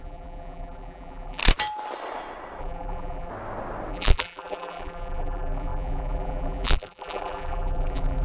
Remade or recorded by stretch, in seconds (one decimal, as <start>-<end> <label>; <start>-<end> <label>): 0.0-1.4 remade; 1.4-2.6 recorded; 2.6-3.3 remade; 3.3-3.9 recorded; 3.9-8.2 remade